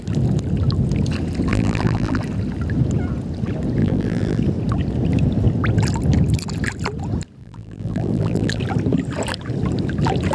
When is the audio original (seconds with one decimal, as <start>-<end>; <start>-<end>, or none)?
0.0-1.5; 2.2-3.8; 4.4-7.4; 8.6-10.3

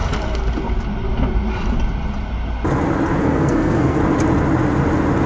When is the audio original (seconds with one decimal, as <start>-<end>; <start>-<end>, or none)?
0.0-3.2; 4.0-5.3

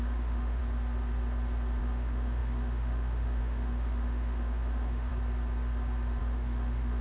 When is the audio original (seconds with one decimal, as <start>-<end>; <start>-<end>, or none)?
0.6-1.8; 5.1-6.2